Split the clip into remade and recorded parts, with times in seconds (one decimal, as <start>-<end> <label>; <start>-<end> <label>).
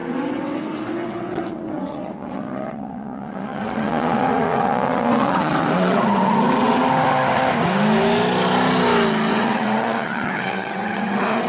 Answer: 0.0-6.8 remade; 6.8-9.3 recorded; 9.3-11.5 remade